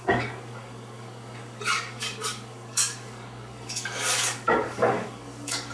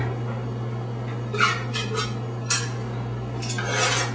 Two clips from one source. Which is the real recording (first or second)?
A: second